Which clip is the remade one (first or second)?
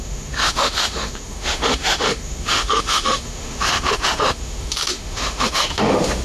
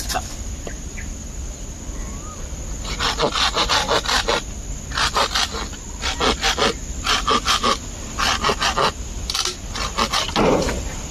first